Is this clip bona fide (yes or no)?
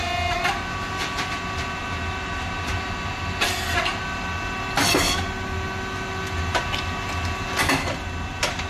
yes